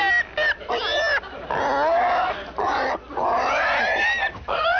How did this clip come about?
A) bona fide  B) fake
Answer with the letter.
A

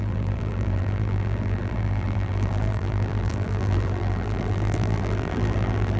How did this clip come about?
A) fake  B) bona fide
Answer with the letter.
A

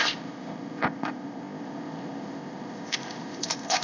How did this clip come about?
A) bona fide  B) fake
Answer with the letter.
B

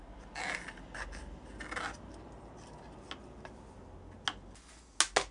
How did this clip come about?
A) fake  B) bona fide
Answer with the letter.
B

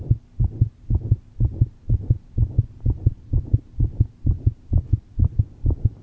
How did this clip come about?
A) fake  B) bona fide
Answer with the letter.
B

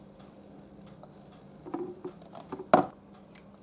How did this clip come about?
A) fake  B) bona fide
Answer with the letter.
B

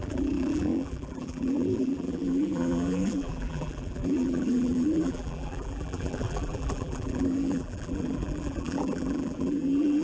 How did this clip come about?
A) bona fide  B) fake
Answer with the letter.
B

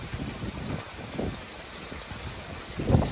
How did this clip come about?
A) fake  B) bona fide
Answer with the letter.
B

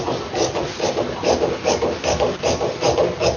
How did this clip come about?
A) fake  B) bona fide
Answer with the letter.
B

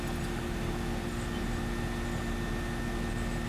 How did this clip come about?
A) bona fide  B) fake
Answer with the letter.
A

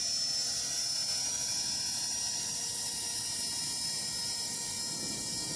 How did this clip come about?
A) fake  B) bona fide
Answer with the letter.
B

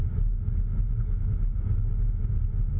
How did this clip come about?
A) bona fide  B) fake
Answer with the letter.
A